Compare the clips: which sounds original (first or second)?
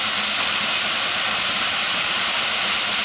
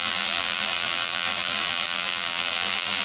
first